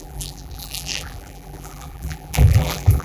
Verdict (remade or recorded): remade